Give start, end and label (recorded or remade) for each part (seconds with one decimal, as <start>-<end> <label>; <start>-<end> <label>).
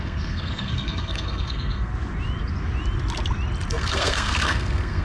0.0-1.9 remade; 1.9-3.7 recorded; 3.7-5.0 remade